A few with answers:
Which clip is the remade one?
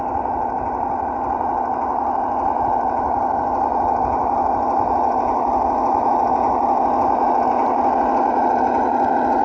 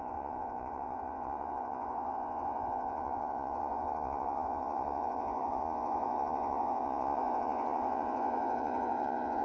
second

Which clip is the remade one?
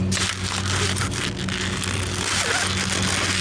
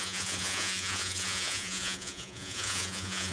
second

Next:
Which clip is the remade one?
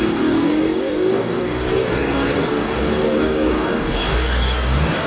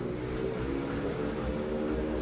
first